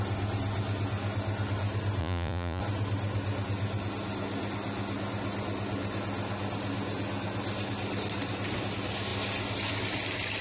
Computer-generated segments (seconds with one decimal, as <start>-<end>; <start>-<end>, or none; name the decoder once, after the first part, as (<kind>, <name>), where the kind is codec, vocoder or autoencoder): 2.0-2.6 (vocoder, Vocos)